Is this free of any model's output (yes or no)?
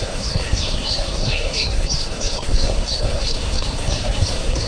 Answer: no